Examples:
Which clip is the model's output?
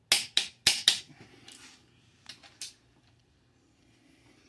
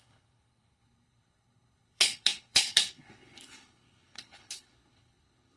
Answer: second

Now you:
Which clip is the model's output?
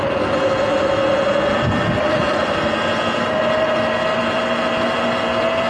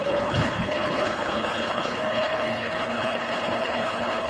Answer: second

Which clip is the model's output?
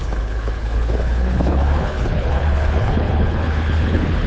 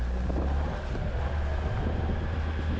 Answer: first